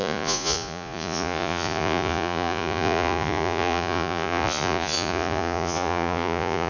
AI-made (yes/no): yes